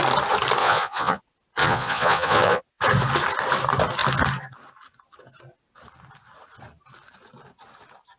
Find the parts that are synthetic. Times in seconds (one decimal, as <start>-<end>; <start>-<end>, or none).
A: 0.6-1.2; 1.6-2.6